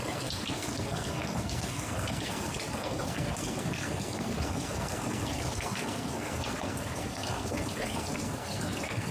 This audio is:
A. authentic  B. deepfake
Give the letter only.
B